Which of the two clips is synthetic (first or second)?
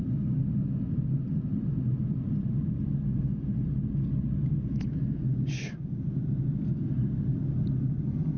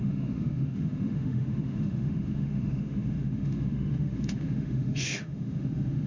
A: second